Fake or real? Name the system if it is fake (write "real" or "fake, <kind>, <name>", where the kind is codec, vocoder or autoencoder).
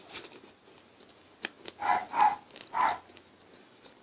real